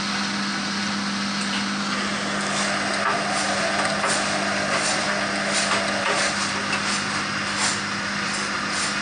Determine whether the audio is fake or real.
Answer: real